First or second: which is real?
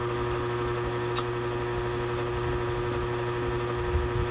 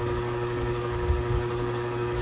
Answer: first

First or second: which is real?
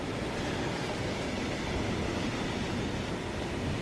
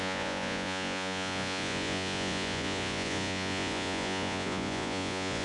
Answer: first